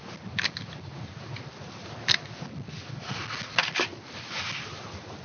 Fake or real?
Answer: real